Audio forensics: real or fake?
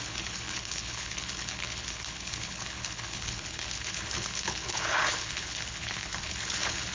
fake